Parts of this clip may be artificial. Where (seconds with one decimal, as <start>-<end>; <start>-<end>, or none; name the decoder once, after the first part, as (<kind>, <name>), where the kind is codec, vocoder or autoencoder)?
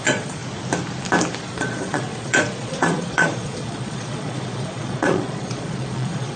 0.0-0.4 (vocoder, Vocos); 1.4-6.4